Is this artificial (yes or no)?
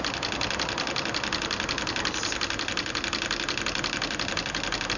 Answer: no